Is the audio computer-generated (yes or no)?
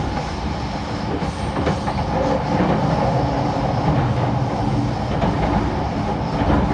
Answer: no